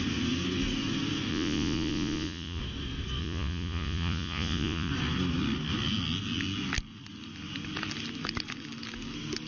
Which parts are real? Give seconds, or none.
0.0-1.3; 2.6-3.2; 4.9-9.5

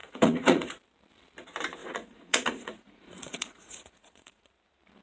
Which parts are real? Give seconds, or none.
0.7-1.8; 4.5-5.0

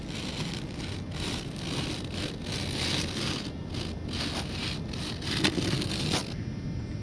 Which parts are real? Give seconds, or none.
0.0-7.0

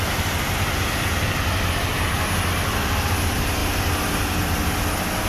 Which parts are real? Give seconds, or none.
0.0-5.3

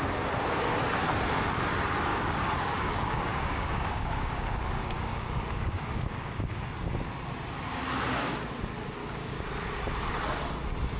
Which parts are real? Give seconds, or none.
0.0-2.1; 6.5-9.0; 9.5-11.0

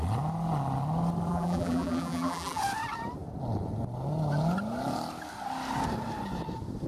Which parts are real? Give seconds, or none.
0.0-1.3; 2.6-6.9

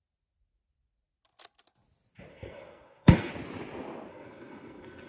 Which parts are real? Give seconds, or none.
0.0-2.3; 3.3-4.1